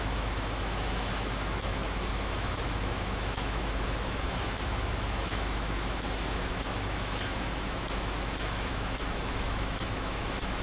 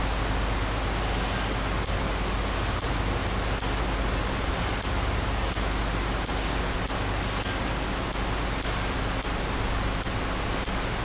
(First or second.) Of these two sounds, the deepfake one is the first